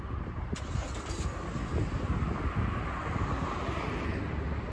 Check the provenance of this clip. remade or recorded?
recorded